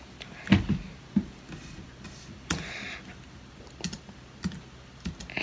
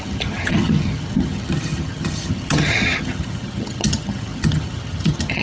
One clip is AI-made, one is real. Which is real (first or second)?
first